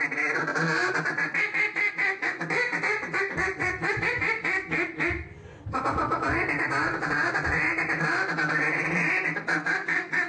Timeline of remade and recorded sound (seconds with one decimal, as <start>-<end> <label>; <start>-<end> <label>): 0.0-0.5 remade; 0.5-1.9 recorded; 1.9-2.6 remade; 2.6-3.2 recorded; 3.2-10.3 remade